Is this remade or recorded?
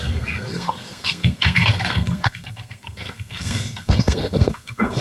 remade